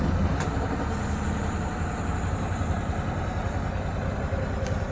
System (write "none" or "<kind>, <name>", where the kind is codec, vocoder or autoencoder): none